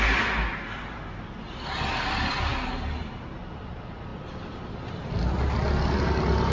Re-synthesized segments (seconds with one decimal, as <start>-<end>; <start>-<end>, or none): none